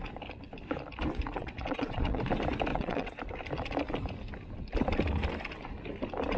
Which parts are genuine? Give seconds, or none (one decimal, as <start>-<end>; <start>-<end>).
0.0-1.4; 2.2-2.7; 3.2-6.4